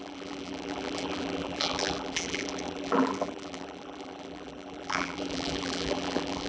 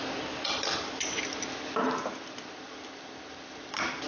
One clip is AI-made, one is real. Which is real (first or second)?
second